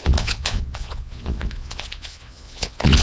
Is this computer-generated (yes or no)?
yes